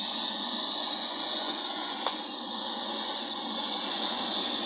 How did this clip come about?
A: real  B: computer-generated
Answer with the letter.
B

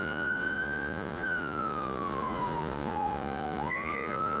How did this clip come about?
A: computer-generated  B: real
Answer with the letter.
A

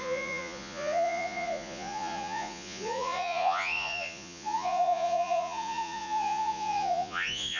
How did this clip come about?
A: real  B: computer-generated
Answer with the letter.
B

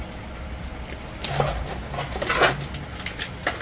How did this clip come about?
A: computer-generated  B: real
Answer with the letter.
B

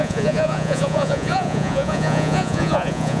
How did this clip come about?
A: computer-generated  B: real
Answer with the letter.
A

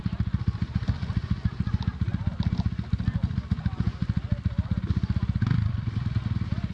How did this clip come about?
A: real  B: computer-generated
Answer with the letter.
A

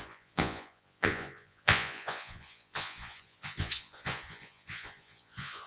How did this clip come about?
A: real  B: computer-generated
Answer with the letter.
B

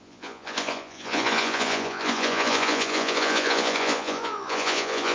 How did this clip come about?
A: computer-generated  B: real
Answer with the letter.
A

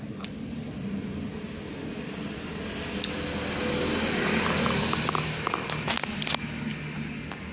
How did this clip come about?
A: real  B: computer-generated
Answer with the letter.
A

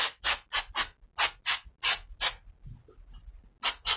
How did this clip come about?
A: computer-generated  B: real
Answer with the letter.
B